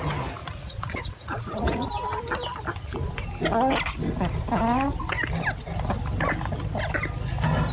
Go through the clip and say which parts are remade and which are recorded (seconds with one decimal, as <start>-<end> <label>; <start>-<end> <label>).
0.0-0.4 recorded; 0.4-1.9 remade; 1.9-7.7 recorded